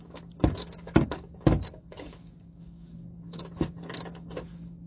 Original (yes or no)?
no